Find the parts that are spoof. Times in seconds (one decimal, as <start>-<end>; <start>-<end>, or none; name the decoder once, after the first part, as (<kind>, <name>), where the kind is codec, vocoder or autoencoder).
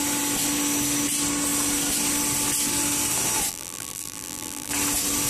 3.5-4.7 (vocoder, BigVGAN v2)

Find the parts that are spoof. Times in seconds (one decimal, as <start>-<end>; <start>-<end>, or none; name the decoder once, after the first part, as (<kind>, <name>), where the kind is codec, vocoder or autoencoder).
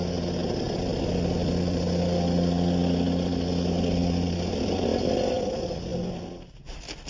none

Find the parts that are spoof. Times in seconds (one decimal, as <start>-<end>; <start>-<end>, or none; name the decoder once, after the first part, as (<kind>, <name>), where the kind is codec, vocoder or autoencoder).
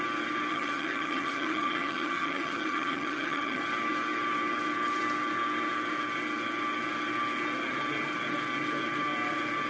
0.5-3.6 (vocoder, HiFi-GAN)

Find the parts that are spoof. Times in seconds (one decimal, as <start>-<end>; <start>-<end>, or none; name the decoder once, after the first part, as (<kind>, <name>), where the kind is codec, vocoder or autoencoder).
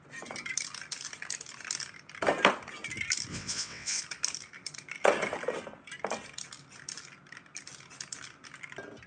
3.3-4.0 (vocoder, WaveNeXt)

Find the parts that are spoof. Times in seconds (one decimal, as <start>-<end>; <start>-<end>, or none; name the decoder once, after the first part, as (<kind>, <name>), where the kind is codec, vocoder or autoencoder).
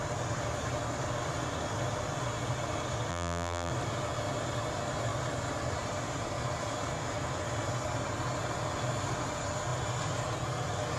3.1-3.7 (vocoder, BigVGAN v2)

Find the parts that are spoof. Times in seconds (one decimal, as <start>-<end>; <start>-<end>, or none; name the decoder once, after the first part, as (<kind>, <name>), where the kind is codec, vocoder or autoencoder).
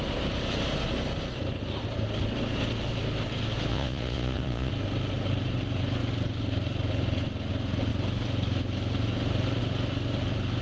3.7-4.7 (vocoder, Vocos)